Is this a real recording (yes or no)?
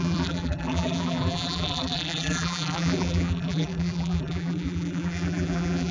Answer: no